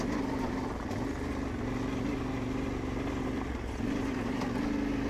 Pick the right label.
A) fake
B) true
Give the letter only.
B